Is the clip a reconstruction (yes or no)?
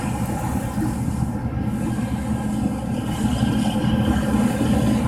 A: no